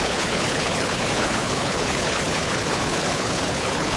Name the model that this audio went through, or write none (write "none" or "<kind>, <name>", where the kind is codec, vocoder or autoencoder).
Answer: codec, HILCodec